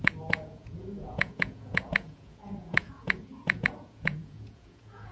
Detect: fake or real fake